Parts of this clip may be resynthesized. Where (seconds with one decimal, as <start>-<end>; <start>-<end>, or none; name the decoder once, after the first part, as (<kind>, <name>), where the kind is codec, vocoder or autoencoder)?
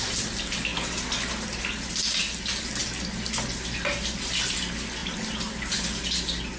none